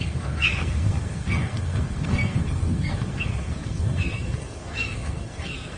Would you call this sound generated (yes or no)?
yes